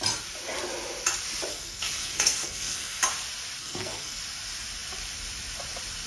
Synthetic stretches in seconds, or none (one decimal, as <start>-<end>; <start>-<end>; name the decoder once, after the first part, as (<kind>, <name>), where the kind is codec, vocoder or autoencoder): 1.5-3.0 (codec, SNAC); 3.6-4.2